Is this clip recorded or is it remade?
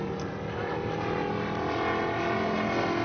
recorded